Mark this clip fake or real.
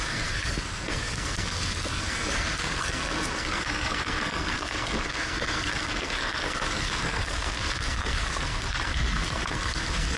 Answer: fake